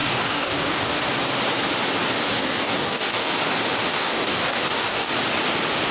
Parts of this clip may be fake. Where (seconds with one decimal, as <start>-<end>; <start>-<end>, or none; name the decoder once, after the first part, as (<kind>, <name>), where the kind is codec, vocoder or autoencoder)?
0.0-1.0 (codec, DAC); 2.3-3.3; 3.9-5.1